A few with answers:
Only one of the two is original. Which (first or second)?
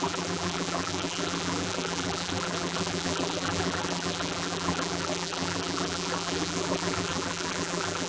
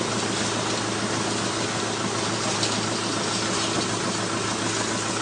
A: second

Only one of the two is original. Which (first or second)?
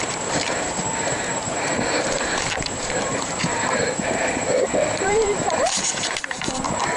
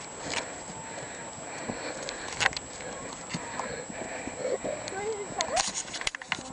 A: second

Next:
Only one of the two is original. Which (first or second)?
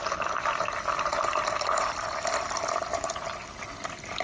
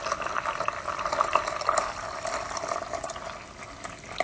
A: second